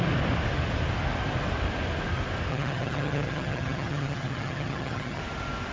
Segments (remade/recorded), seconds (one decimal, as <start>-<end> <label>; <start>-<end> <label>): 0.0-2.5 recorded; 2.5-5.2 remade; 5.2-5.7 recorded

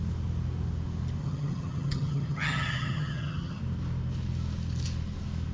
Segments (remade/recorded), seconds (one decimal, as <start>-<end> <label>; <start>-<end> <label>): 0.0-1.2 recorded; 1.2-3.6 remade; 3.6-5.5 recorded

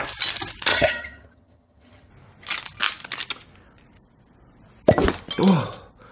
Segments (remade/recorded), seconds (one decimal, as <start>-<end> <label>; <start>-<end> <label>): 0.0-0.7 recorded; 0.7-2.1 remade; 2.1-6.1 recorded

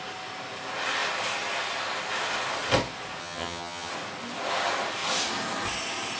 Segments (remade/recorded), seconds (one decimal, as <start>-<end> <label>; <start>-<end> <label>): 0.0-3.2 recorded; 3.2-3.9 remade; 3.9-6.2 recorded

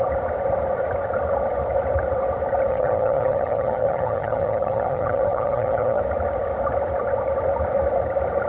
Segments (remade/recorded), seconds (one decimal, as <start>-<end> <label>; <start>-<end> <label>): 0.0-2.7 recorded; 2.7-6.0 remade; 6.0-8.5 recorded